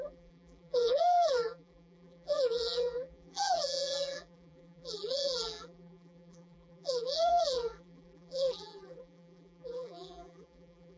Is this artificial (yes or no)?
yes